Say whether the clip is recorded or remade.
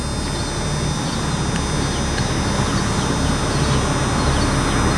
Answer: recorded